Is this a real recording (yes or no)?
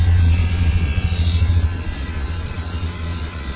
no